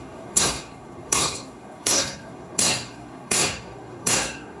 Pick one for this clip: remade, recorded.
remade